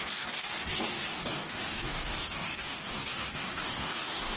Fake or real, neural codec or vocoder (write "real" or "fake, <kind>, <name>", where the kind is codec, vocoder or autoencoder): fake, codec, DAC